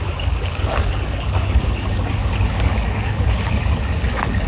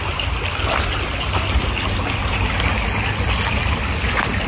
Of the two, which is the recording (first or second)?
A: second